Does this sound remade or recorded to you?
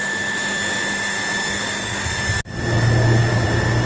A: recorded